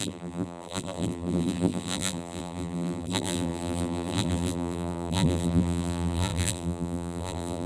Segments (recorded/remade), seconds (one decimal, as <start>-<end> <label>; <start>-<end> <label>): 0.0-7.7 remade